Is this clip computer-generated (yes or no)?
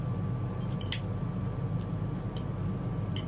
no